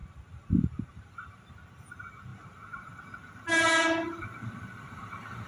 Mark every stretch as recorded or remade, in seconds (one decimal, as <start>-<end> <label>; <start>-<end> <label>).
0.0-1.5 remade; 1.5-2.3 recorded; 2.3-5.1 remade; 5.1-5.5 recorded